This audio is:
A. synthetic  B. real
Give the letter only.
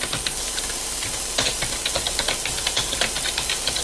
B